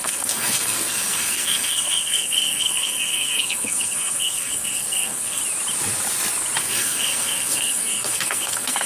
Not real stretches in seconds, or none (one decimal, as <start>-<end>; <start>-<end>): 0.0-5.4; 6.6-8.9